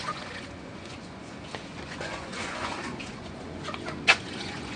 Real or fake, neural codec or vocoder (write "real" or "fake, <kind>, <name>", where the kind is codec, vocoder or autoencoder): fake, vocoder, Vocos